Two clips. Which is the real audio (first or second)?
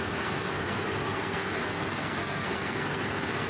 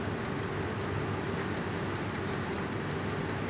second